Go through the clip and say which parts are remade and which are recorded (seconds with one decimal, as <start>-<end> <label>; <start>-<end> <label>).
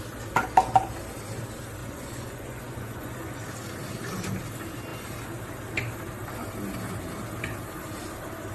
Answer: 0.0-1.8 recorded; 1.8-3.4 remade; 3.4-8.5 recorded